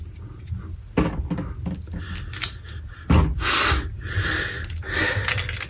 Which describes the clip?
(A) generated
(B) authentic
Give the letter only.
B